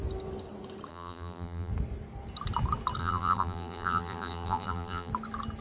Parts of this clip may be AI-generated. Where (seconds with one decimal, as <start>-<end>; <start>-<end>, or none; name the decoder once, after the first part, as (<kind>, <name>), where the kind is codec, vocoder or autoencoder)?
0.9-1.7 (vocoder, BigVGAN v2); 3.0-5.1